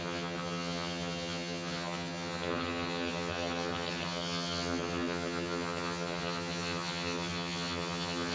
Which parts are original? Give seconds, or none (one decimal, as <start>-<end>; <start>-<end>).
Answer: none